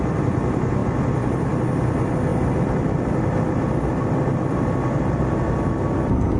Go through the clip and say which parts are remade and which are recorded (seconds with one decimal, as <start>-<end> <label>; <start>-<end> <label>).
0.0-6.4 recorded